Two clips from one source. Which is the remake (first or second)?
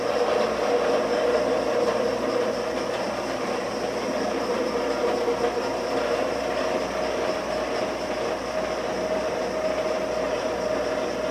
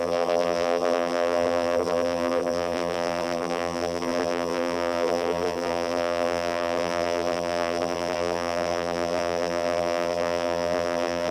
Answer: second